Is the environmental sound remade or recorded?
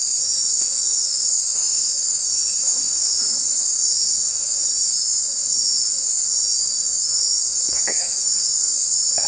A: remade